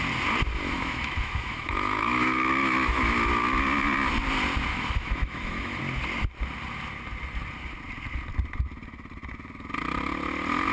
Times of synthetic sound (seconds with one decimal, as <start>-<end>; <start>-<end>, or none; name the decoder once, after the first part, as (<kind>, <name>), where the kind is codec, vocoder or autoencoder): 0.5-3.3 (autoencoder, DAC-VAE); 4.7-5.8